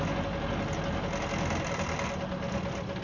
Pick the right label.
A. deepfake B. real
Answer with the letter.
B